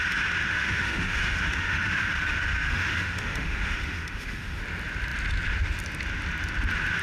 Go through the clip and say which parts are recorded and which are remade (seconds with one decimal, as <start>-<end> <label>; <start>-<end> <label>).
0.0-0.5 recorded; 0.5-4.6 remade; 4.6-7.0 recorded